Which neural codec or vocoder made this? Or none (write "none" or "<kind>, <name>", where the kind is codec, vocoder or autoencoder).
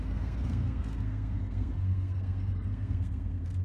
codec, SNAC